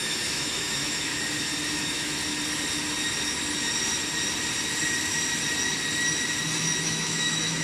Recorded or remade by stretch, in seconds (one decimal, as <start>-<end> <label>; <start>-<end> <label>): 0.0-1.1 remade; 1.1-1.7 recorded; 1.7-2.2 remade; 2.2-6.8 recorded; 6.8-7.6 remade